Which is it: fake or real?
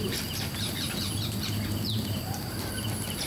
fake